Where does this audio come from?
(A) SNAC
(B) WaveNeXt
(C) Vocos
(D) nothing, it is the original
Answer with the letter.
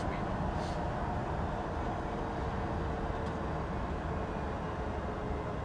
D